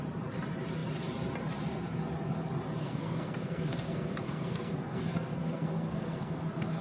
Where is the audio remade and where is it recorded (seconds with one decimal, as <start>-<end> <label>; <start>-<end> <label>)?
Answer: 0.0-2.8 recorded; 2.8-6.8 remade